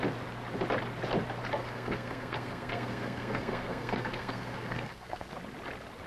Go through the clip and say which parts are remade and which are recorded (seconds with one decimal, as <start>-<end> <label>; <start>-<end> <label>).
0.0-1.6 recorded; 1.6-5.3 remade; 5.3-6.1 recorded